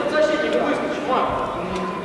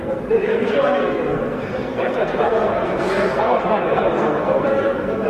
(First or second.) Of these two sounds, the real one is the first